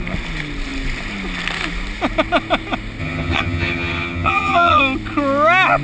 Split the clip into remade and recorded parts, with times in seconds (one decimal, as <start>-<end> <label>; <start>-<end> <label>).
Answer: 0.0-3.0 recorded; 3.0-4.8 remade; 4.8-5.8 recorded